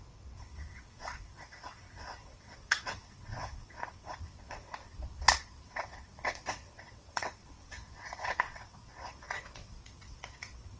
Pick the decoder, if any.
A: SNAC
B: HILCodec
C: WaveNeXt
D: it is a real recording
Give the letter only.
C